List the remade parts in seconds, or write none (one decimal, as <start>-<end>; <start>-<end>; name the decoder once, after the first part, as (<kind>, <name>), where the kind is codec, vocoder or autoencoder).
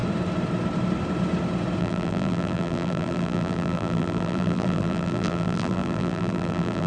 1.8-6.9 (vocoder, BigVGAN v2)